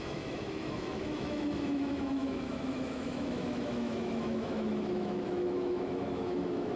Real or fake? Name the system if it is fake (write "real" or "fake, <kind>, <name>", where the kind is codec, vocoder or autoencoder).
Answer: fake, autoencoder, DAC-VAE